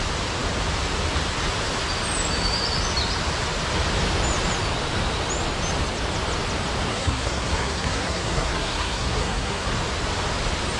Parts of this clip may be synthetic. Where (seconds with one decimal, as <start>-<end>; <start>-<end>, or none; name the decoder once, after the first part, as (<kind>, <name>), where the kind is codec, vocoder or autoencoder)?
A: 6.9-9.7 (codec, SNAC)